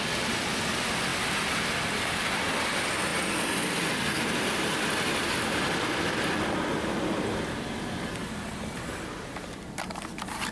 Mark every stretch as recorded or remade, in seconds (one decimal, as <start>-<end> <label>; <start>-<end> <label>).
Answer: 0.0-10.5 recorded